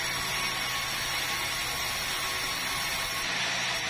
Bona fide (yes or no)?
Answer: yes